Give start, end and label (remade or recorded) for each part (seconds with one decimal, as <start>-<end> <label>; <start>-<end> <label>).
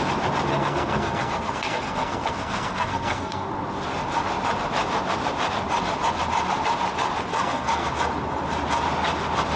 0.0-0.5 recorded; 0.5-3.5 remade; 3.5-7.3 recorded; 7.3-7.9 remade; 7.9-9.6 recorded